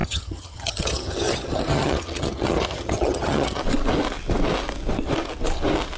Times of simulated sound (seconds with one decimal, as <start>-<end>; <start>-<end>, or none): 0.0-3.6